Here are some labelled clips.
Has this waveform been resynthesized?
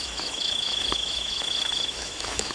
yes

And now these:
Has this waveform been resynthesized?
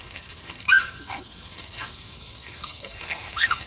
yes